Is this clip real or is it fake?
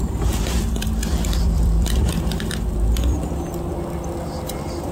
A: fake